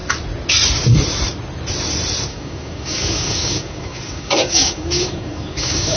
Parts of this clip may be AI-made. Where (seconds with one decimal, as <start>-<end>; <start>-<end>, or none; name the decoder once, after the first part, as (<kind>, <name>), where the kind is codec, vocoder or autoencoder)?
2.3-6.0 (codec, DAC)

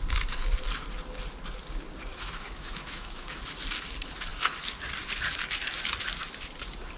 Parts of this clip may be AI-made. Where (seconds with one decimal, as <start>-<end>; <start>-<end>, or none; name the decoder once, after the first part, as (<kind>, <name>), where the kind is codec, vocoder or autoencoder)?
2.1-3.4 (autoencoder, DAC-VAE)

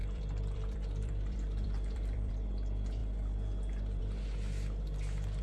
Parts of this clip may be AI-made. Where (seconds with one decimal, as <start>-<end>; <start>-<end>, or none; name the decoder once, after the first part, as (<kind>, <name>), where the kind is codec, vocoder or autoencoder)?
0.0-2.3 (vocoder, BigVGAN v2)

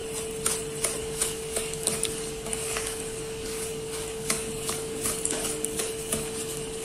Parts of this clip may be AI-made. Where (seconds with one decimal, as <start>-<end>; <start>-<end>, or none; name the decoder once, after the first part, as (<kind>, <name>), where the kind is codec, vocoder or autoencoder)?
1.0-6.8 (codec, DAC)

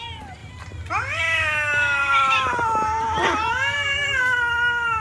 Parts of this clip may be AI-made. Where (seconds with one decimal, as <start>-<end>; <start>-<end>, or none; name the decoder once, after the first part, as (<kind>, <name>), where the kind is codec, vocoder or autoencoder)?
none

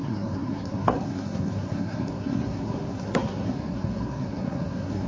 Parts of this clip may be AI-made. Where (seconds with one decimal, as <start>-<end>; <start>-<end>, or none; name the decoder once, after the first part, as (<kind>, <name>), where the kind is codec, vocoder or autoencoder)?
0.0-5.1 (codec, SNAC)

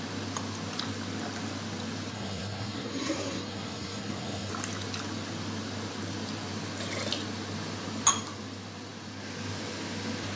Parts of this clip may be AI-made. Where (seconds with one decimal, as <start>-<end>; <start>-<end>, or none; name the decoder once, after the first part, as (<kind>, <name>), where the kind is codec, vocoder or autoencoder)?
2.1-4.5 (codec, SNAC)

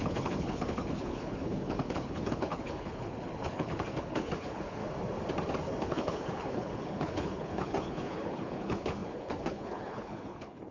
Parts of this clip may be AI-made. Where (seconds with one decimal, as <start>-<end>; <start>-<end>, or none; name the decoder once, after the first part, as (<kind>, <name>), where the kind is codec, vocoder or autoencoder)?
0.0-4.8 (codec, HILCodec); 5.8-10.7